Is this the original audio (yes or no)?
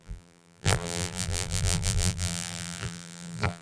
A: no